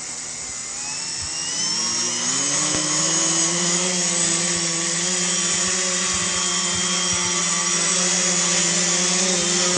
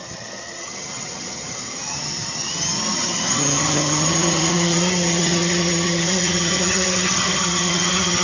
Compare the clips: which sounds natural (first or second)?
first